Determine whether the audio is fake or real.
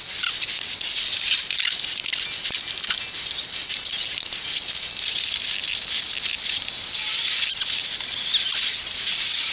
real